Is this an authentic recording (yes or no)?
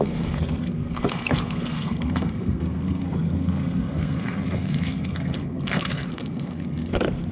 no